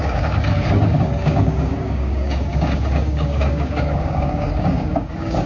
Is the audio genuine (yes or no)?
no